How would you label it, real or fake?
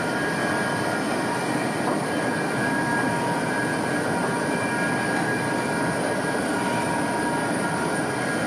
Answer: real